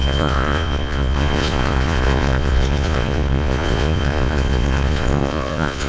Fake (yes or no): yes